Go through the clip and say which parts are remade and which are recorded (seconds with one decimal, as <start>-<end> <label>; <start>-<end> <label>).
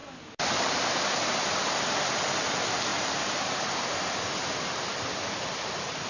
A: 0.0-2.9 recorded; 2.9-4.1 remade; 4.1-6.1 recorded